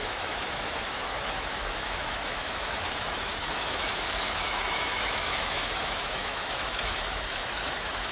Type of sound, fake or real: fake